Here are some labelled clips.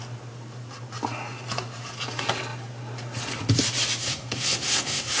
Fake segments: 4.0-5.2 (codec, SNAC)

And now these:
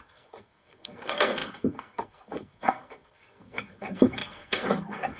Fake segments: 0.0-5.2 (codec, SNAC)

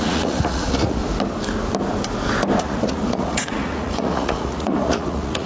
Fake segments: 0.0-1.0 (vocoder, Vocos); 2.6-5.5

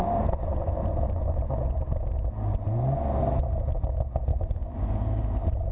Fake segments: 0.8-1.4 (vocoder, Vocos); 4.3-4.9

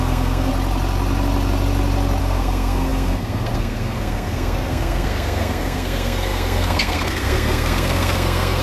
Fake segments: 0.0-0.5 (codec, SNAC); 2.2-8.6

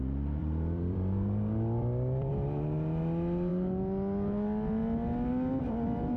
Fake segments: 0.4-2.3 (vocoder, BigVGAN v2)